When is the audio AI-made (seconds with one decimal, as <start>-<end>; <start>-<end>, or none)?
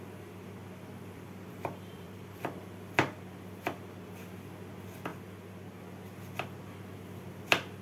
0.6-3.1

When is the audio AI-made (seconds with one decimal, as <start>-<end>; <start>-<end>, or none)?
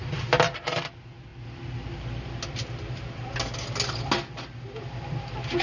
none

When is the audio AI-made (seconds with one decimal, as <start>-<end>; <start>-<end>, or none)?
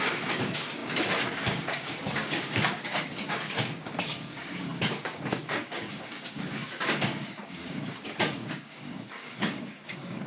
0.0-10.3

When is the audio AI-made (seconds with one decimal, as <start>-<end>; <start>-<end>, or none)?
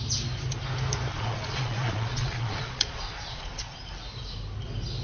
1.1-3.8